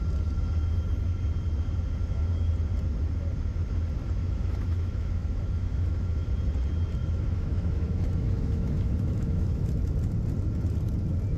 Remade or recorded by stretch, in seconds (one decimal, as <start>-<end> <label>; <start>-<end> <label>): 0.0-2.0 recorded; 2.0-2.5 remade; 2.5-4.2 recorded; 4.2-6.3 remade; 6.3-7.0 recorded; 7.0-9.9 remade; 9.9-11.4 recorded